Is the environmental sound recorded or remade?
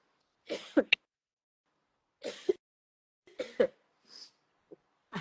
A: recorded